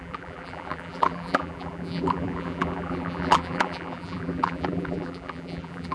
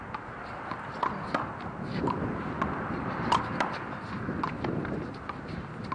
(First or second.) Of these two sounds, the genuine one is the second